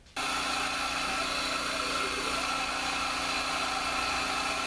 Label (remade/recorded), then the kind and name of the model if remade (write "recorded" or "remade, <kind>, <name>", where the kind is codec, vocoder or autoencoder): recorded